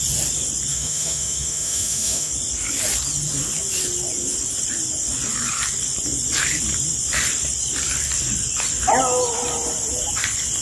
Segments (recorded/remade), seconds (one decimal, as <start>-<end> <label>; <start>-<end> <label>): 0.0-0.7 recorded; 0.7-2.3 remade; 2.3-10.6 recorded